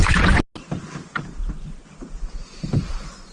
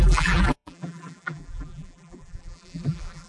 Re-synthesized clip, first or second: second